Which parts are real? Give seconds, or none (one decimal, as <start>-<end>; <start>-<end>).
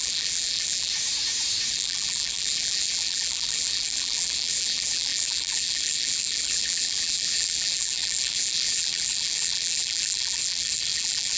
0.9-1.7